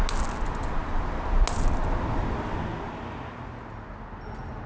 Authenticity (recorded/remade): recorded